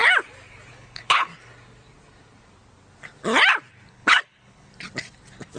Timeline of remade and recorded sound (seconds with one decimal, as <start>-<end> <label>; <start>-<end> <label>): 0.0-0.7 recorded; 0.7-1.3 remade; 1.3-3.9 recorded; 3.9-4.7 remade; 4.7-5.6 recorded